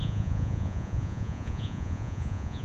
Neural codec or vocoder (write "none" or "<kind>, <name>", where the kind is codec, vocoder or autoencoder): vocoder, Vocos